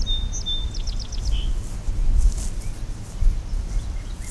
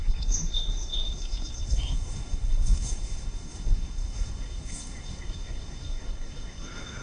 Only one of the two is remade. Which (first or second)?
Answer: second